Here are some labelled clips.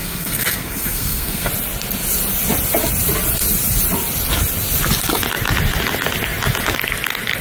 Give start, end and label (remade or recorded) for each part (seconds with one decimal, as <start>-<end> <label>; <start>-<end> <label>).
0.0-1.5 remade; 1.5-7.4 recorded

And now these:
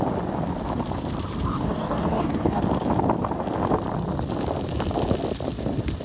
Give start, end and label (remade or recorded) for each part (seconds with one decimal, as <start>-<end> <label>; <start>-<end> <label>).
0.0-1.5 recorded; 1.5-2.6 remade; 2.6-6.0 recorded

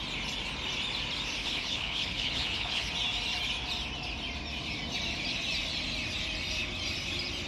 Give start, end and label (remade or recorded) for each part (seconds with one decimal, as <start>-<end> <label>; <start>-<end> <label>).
0.0-1.4 recorded; 1.4-2.9 remade; 2.9-7.5 recorded

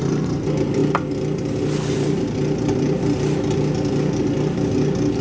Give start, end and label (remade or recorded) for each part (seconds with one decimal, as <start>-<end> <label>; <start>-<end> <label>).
0.0-5.2 recorded

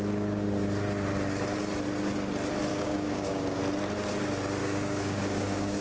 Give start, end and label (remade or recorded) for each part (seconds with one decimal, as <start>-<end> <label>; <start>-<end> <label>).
0.0-2.7 recorded; 2.7-3.6 remade; 3.6-4.6 recorded; 4.6-5.8 remade